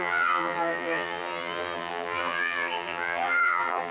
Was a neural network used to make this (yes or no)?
yes